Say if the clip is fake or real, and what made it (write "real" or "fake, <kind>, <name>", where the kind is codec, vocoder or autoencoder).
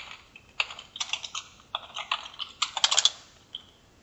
real